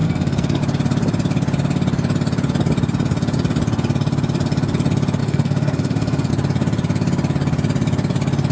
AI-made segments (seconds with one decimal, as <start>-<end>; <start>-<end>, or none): 0.0-0.6; 5.2-6.3